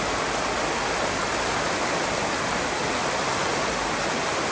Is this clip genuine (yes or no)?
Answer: yes